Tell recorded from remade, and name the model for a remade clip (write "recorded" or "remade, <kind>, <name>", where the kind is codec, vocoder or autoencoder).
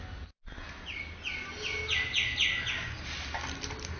recorded